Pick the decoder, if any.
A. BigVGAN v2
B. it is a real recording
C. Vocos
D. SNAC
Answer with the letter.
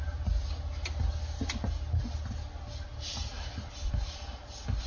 B